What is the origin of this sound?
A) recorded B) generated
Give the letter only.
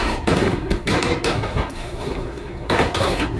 B